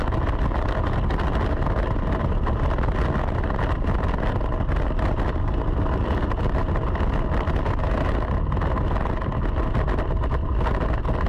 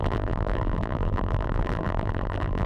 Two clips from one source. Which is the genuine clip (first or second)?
first